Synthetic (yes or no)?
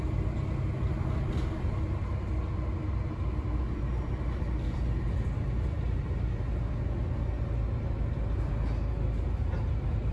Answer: no